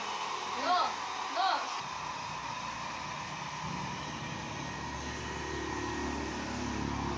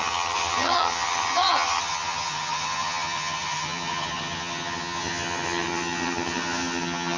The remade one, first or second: second